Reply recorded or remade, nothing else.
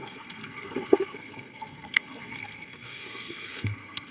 remade